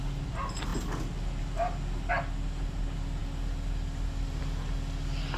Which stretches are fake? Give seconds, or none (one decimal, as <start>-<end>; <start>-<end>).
none